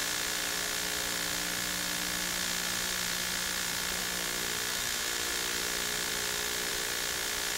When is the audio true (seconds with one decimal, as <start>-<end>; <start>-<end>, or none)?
0.0-4.7; 5.3-7.6